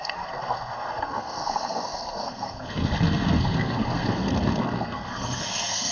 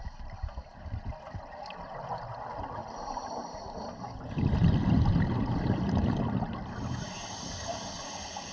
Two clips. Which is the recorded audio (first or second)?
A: second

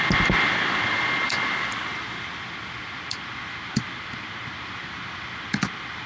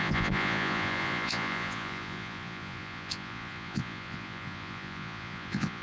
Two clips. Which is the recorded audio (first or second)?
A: first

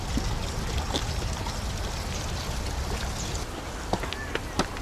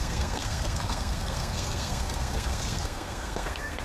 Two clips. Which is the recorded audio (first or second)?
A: first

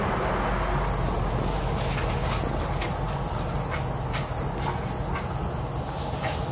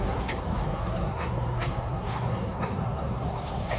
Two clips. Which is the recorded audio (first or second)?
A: first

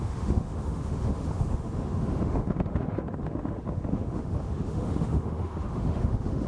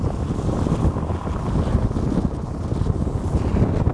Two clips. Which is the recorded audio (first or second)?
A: second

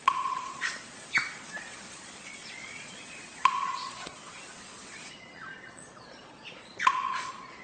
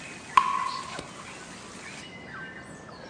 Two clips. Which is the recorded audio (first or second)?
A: second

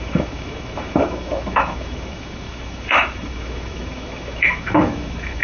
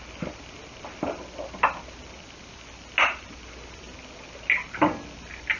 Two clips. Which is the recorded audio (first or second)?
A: second